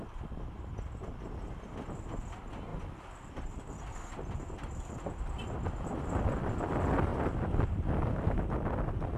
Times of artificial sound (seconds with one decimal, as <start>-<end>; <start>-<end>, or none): none